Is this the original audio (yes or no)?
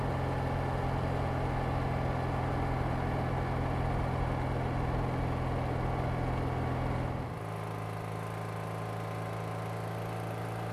yes